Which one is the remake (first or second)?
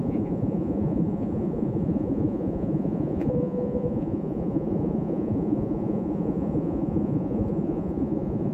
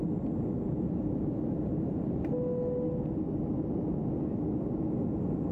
first